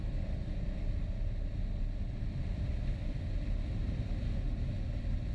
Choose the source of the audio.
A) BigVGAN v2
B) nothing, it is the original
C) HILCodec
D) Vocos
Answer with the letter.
A